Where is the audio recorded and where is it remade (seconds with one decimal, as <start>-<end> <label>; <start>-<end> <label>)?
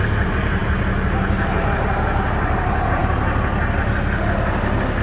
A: 0.0-5.0 recorded